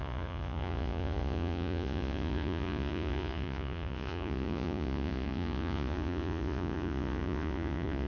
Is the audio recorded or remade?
remade